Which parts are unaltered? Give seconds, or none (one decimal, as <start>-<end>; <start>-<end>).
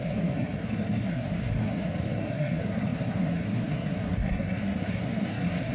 none